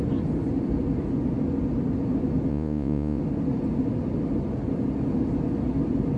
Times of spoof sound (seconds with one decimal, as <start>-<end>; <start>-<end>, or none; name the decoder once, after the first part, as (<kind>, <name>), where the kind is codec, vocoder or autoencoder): 2.5-3.2 (vocoder, Vocos)